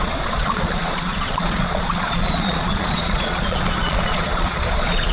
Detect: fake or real fake